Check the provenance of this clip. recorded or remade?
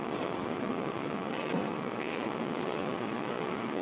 remade